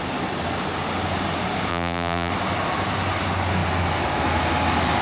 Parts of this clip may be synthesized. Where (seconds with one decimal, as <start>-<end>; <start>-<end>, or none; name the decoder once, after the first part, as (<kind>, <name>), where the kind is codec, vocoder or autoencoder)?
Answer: 1.7-2.3 (vocoder, BigVGAN v2)